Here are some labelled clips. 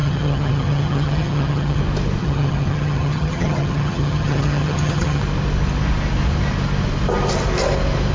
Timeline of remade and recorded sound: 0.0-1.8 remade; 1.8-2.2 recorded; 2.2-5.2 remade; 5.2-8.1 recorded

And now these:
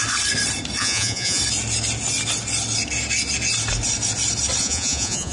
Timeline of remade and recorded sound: 0.0-0.8 recorded; 0.8-1.4 remade; 1.4-4.6 recorded; 4.6-5.3 remade

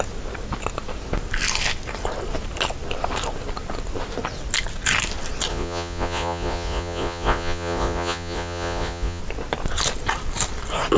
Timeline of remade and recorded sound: 0.0-5.5 recorded; 5.5-9.2 remade; 9.2-11.0 recorded

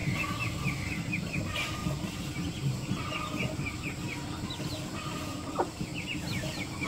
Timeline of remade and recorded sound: 0.0-6.9 recorded

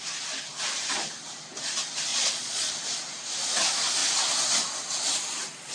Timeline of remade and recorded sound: 0.0-2.1 recorded; 2.1-2.7 remade; 2.7-5.7 recorded

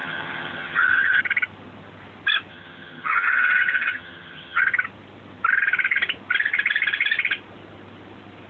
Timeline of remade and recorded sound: 0.0-1.2 remade; 1.2-2.5 recorded; 2.5-4.6 remade; 4.6-8.5 recorded

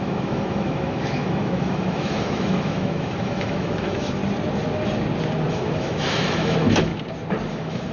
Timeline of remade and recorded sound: 0.0-4.2 remade; 4.2-5.5 recorded; 5.5-6.9 remade; 6.9-7.5 recorded; 7.5-7.9 remade